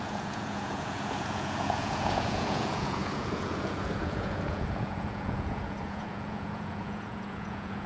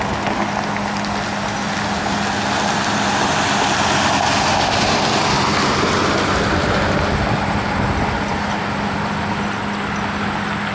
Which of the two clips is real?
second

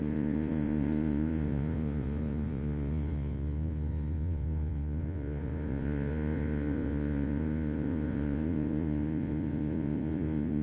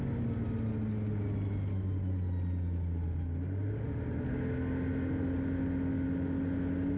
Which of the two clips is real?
second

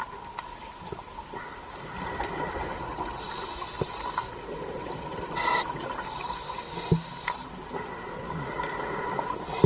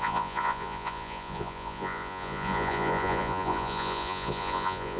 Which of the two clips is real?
first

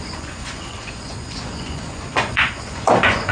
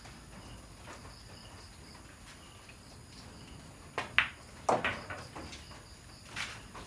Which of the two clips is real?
second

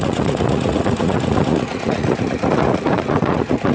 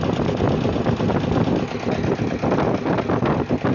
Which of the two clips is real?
second